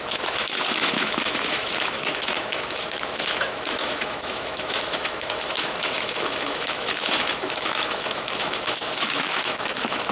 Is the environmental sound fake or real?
fake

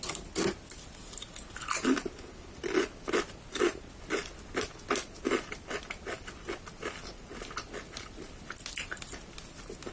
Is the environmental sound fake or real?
real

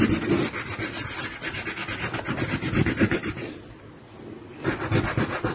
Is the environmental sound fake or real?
real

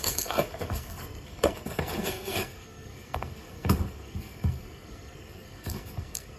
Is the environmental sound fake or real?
fake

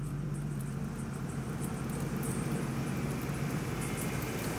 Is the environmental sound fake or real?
fake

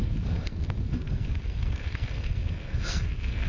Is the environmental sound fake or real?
fake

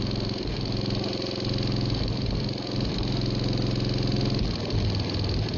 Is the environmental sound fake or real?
real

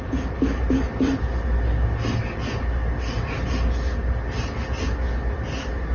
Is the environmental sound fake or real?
real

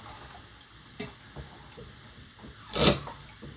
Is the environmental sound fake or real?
real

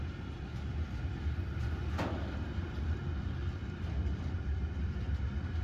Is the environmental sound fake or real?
real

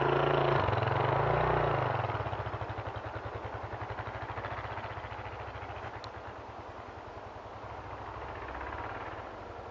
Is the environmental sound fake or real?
real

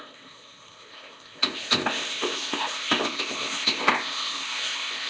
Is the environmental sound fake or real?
fake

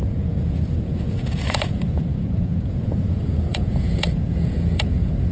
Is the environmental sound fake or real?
fake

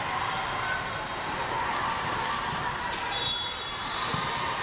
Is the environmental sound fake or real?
real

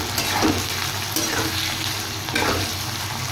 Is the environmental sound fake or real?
real